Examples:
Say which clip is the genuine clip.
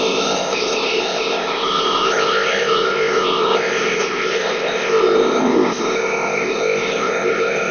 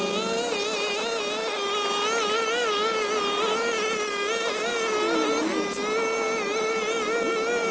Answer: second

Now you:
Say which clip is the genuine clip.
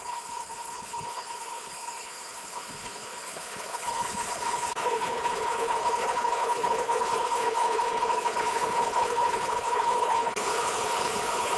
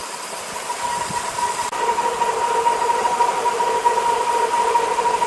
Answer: second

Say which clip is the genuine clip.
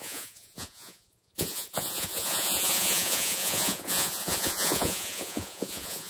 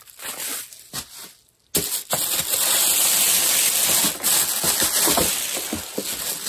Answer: second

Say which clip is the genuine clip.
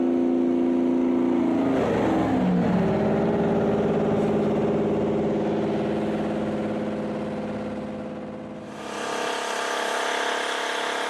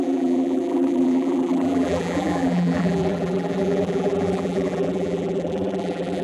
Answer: first